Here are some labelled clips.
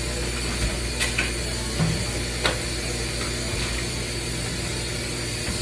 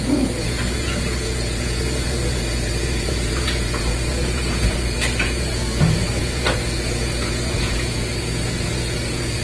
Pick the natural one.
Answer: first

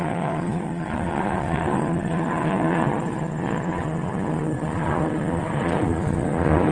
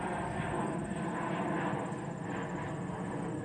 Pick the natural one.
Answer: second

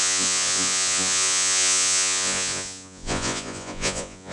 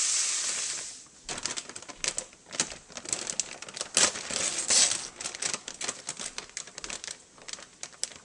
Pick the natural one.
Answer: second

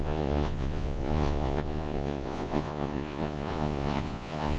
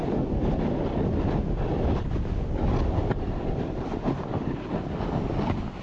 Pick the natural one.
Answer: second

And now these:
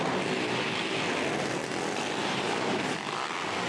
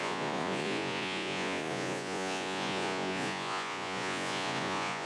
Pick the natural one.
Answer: first